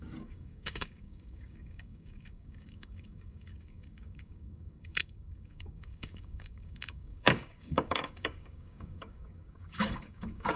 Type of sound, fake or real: fake